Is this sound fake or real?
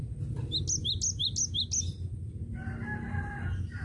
real